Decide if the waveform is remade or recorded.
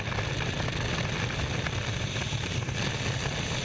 recorded